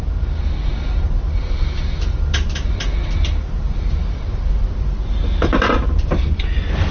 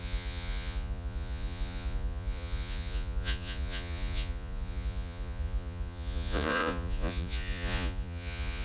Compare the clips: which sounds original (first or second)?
first